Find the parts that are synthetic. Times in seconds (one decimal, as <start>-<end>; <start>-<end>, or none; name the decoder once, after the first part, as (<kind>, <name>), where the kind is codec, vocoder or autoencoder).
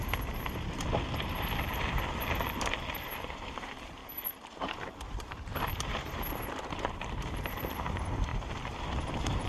0.0-4.0 (vocoder, BigVGAN v2); 4.6-9.5